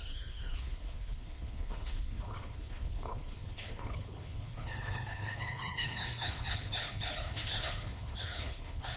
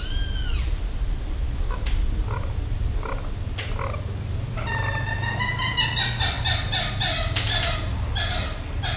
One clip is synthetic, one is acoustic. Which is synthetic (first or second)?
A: first